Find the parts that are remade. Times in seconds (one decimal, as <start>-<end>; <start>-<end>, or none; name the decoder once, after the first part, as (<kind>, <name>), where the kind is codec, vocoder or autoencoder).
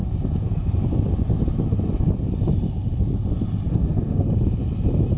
3.7-4.3 (codec, SNAC)